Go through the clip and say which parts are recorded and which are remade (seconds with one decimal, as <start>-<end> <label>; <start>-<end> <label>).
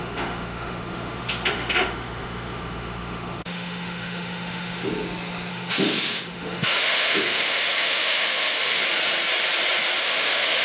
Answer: 0.0-4.9 remade; 4.9-5.5 recorded; 5.5-8.8 remade; 8.8-10.0 recorded; 10.0-10.6 remade